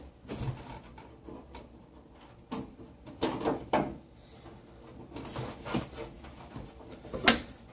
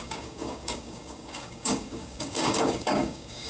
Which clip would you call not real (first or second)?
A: second